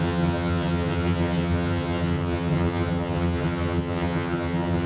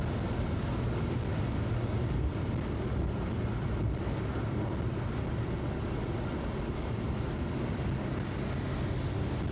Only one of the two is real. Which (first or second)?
second